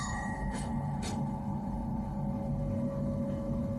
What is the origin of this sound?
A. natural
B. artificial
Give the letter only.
B